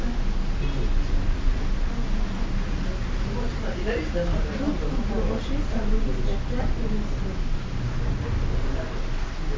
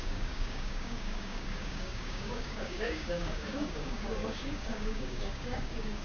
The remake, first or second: second